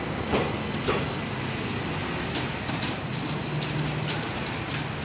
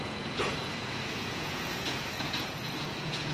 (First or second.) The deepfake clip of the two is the second